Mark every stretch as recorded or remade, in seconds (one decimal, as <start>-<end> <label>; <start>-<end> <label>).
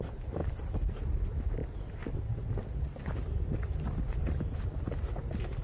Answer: 0.0-5.6 recorded